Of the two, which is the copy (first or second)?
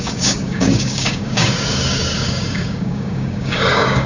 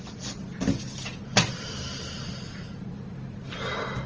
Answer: first